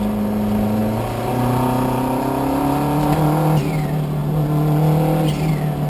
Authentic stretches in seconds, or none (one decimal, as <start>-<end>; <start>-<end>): 0.0-5.9